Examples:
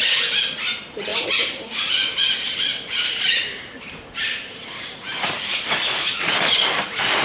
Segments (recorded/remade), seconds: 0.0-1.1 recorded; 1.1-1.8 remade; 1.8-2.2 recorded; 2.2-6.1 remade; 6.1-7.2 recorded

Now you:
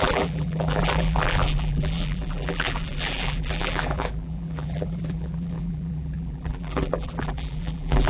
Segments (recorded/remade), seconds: 0.0-8.1 remade

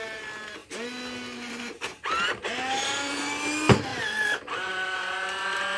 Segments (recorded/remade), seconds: 0.0-3.9 recorded; 3.9-4.7 remade; 4.7-5.8 recorded

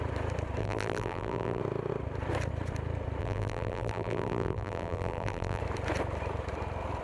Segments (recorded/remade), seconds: 0.0-0.6 recorded; 0.6-1.6 remade; 1.6-3.2 recorded; 3.2-5.6 remade; 5.6-7.0 recorded

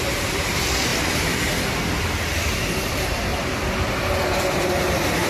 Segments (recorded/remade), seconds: 0.0-0.9 remade; 0.9-2.7 recorded; 2.7-3.3 remade; 3.3-5.3 recorded

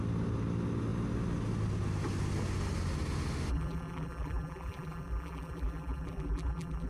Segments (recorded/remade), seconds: 0.0-3.5 recorded; 3.5-6.9 remade